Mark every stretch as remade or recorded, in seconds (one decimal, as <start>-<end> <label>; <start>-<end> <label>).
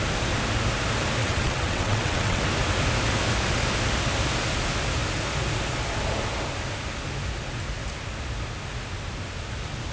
0.0-1.2 recorded; 1.2-2.4 remade; 2.4-9.9 recorded